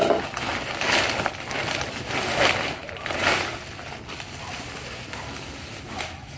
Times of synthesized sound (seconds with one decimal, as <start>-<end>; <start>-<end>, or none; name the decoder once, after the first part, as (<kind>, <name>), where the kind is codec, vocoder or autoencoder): none